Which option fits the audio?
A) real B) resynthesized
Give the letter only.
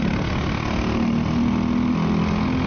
A